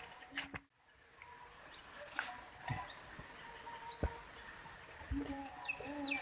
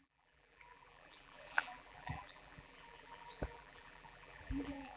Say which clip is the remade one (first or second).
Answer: second